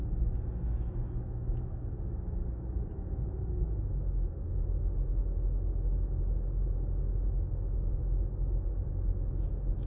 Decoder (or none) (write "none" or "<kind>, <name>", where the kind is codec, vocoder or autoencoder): autoencoder, DAC-VAE